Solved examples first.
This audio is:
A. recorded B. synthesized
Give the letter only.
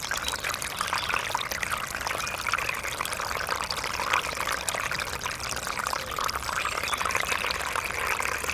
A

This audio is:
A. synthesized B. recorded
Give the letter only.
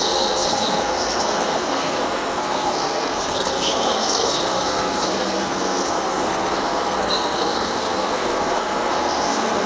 A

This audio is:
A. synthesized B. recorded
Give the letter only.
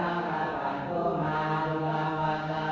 A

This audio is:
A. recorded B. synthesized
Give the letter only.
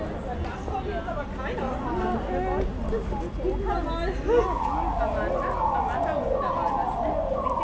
A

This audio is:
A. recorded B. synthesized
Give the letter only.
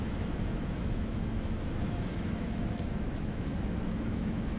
B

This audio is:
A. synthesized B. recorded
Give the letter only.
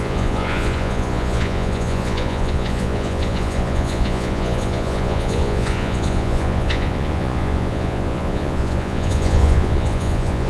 A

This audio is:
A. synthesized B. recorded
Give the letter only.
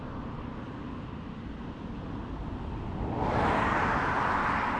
B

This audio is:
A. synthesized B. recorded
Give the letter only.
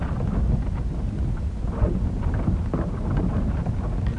B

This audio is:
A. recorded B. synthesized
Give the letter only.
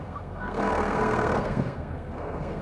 B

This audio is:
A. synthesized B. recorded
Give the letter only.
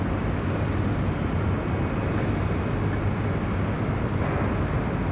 B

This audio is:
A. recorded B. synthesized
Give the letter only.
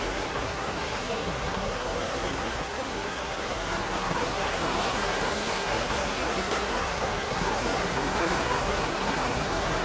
B